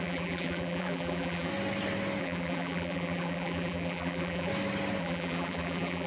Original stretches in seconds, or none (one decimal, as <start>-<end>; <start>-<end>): 1.5-2.2; 4.5-5.0